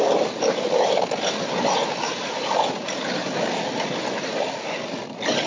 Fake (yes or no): no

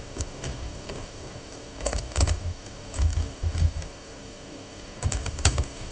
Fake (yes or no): yes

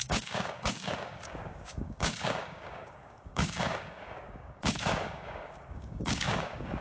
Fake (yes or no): yes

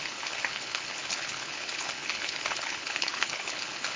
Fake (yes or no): yes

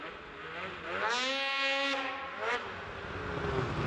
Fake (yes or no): no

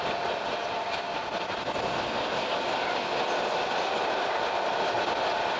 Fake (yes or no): no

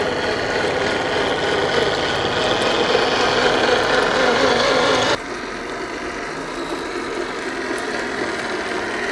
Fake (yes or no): no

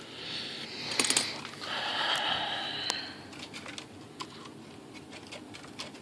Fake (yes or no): no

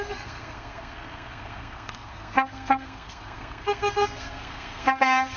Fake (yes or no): yes